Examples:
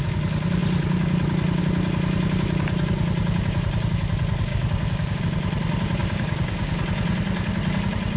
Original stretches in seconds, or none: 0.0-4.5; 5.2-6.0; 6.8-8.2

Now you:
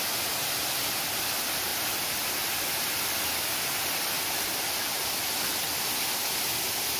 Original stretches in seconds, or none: 0.0-7.0

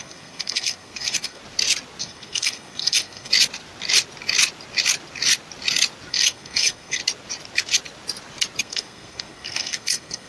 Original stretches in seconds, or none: 1.4-2.0; 3.3-6.1; 7.0-8.6

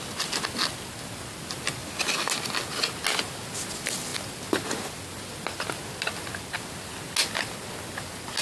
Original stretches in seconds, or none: 0.0-8.4